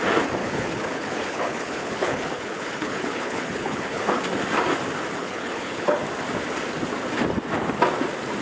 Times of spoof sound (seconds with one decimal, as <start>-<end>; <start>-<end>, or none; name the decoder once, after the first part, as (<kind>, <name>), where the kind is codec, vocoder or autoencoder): 0.4-4.2 (codec, HILCodec); 5.2-6.0